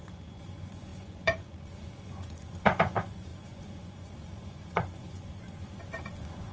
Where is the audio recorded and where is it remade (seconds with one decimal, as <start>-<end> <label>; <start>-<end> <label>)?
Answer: 0.0-6.5 remade